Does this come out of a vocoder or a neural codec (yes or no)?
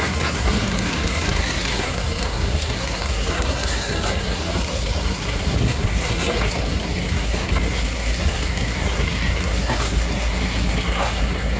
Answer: yes